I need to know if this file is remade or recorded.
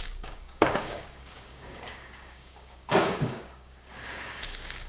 remade